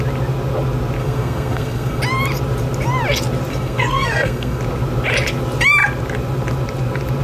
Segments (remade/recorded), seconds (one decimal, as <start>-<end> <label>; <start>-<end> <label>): 0.0-1.0 recorded; 1.0-2.0 remade; 2.0-3.5 recorded; 3.5-4.6 remade; 4.6-7.2 recorded